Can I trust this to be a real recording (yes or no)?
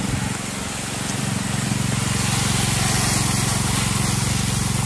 yes